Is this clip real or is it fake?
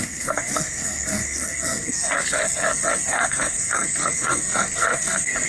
fake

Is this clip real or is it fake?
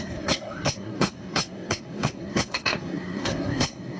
fake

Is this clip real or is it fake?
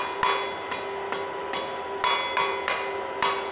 real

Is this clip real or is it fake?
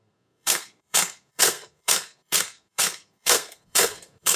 fake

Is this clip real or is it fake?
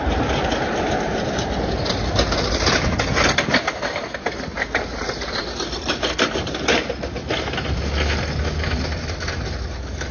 real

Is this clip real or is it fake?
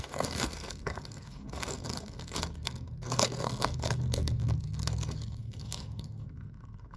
fake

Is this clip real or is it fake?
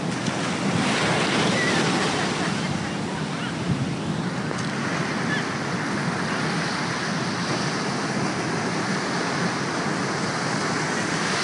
real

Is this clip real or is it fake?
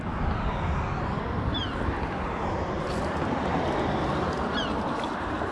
real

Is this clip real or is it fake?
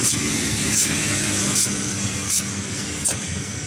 fake